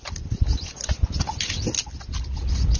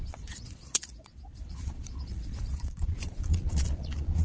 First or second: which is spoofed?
second